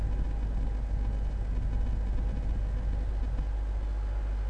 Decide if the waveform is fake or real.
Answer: real